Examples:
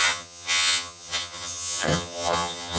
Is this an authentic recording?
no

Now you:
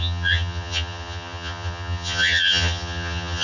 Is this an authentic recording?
no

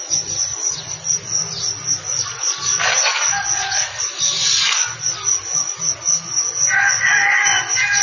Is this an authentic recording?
yes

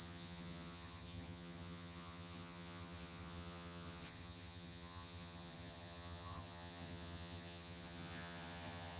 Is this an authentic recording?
no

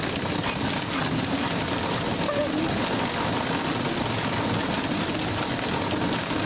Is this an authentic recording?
yes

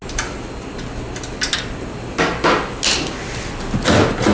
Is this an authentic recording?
yes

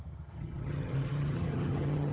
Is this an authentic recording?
no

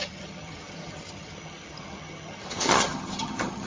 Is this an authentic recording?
no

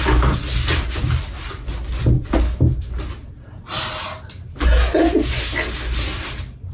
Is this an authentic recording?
yes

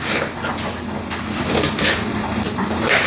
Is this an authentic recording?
yes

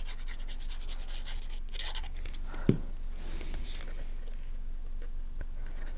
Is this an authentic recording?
yes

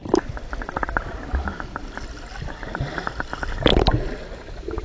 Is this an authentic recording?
yes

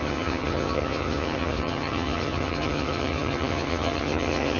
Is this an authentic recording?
no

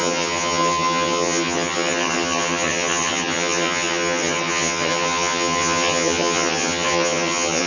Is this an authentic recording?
no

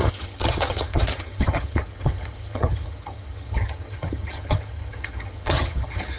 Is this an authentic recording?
no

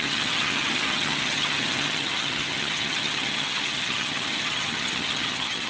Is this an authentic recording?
no